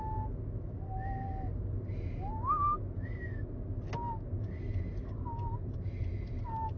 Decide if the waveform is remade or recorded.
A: recorded